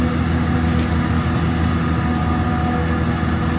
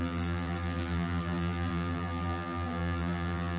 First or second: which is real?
first